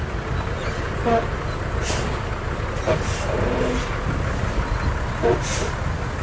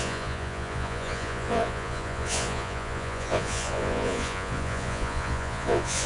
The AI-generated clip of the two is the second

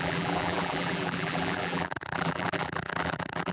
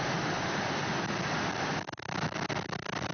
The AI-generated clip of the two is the first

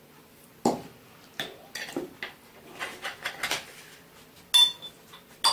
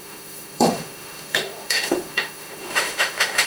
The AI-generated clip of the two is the second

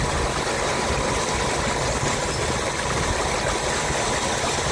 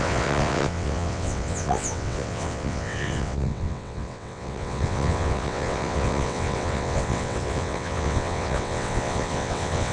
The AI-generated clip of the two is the second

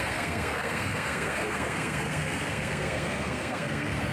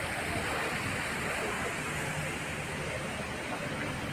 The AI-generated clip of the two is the first